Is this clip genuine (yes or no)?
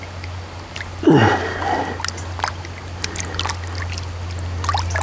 yes